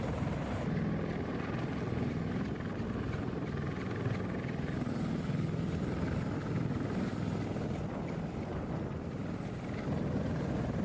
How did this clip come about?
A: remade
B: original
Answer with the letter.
B